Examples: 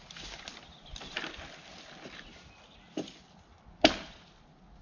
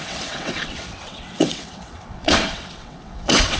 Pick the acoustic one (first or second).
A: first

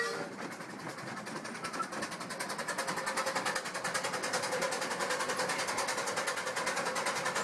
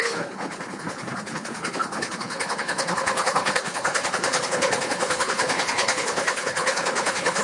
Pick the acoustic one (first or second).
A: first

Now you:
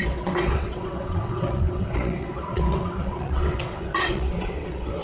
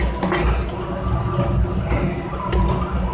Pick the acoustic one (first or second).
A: second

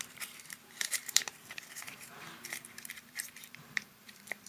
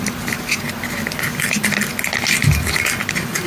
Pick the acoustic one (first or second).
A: second